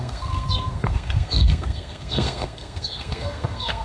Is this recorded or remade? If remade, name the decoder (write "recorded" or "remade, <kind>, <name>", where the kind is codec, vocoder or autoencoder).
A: remade, codec, SNAC